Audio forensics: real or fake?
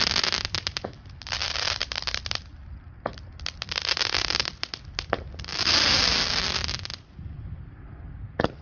real